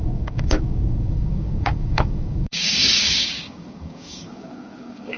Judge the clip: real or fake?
fake